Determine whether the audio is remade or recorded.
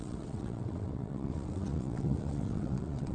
remade